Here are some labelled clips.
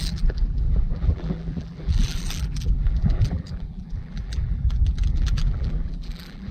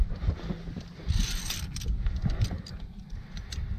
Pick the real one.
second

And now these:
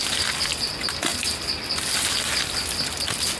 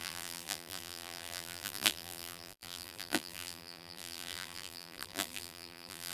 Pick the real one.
first